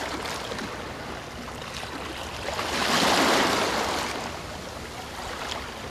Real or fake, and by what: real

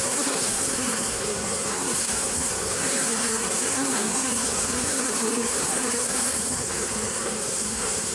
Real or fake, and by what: fake, codec, SNAC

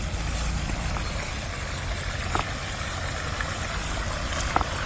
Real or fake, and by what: real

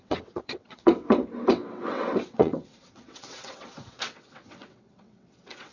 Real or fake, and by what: fake, vocoder, WaveNeXt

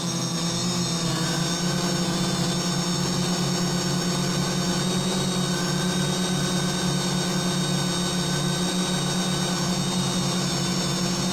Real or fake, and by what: real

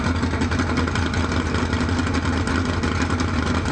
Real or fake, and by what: real